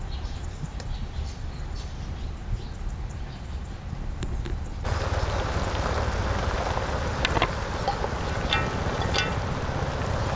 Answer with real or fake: real